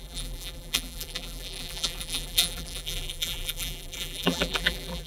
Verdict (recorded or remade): remade